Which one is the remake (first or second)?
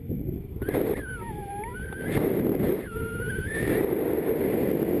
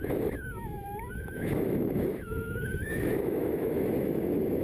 second